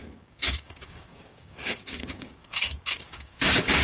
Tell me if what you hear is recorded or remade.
remade